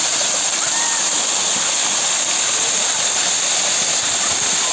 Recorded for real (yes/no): yes